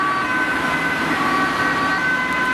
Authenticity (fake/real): real